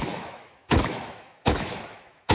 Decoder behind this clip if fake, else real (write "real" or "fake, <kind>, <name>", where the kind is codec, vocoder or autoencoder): fake, autoencoder, DAC-VAE